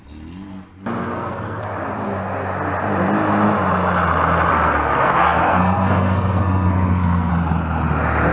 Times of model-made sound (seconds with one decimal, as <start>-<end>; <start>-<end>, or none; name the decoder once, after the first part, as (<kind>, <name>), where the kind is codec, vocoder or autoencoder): 1.0-1.6 (codec, SNAC); 4.5-7.3